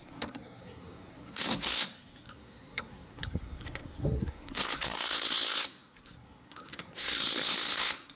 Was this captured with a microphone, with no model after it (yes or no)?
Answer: no